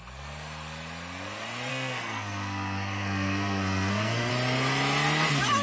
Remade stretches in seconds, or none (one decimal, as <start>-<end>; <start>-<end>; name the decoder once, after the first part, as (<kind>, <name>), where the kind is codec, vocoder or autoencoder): 1.7-4.3 (codec, SNAC)